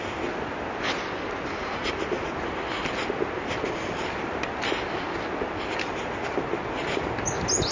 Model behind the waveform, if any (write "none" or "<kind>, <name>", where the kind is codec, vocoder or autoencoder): none